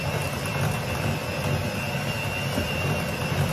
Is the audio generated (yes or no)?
no